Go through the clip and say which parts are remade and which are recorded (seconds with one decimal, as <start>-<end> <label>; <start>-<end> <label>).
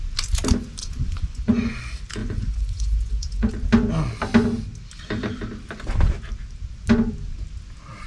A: 0.0-0.8 recorded; 0.8-1.8 remade; 1.8-2.2 recorded; 2.2-3.5 remade; 3.5-8.1 recorded